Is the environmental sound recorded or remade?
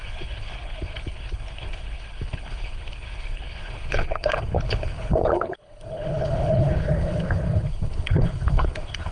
remade